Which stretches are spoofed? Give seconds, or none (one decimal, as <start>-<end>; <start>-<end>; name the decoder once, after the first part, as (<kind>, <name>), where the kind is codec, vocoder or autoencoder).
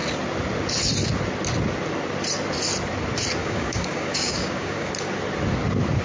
3.4-4.9 (codec, DAC)